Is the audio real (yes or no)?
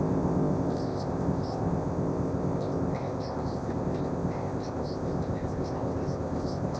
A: no